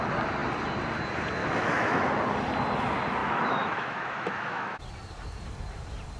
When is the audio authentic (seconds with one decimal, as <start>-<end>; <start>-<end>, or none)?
0.0-1.4; 2.0-3.2; 4.8-6.2